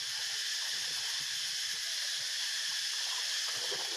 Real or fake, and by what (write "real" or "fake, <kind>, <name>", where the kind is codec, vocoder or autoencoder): real